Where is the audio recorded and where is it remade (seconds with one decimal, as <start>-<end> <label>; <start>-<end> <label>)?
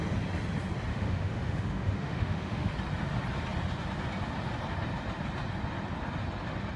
0.0-0.9 recorded; 0.9-2.7 remade; 2.7-6.8 recorded